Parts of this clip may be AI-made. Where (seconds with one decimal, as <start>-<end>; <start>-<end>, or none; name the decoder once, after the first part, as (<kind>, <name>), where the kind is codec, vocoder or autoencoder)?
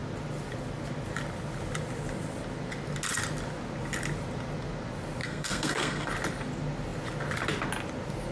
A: 5.2-6.1 (codec, SNAC)